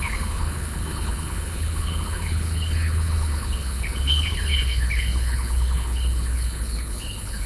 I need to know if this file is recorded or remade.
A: remade